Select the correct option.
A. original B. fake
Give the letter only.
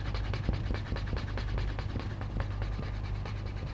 A